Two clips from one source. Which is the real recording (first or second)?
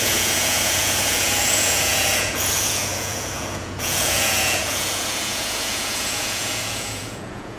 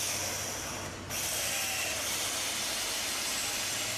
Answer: second